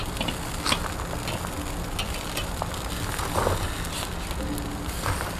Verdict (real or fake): real